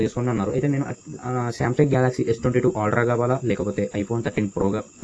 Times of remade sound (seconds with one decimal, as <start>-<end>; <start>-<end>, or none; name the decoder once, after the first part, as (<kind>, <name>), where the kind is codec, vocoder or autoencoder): none